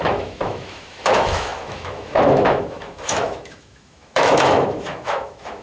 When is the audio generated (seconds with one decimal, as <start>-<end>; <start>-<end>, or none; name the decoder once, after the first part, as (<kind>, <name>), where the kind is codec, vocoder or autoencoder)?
0.0-5.6 (autoencoder, DAC-VAE)

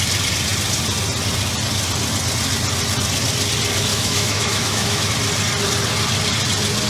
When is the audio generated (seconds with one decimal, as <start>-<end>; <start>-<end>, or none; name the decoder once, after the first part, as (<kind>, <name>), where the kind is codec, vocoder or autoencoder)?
3.9-5.1 (autoencoder, DAC-VAE)

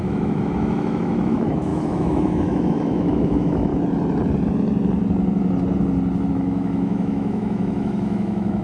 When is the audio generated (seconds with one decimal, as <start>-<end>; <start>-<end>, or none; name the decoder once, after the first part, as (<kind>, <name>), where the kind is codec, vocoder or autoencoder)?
0.0-3.7 (autoencoder, DAC-VAE); 6.3-8.6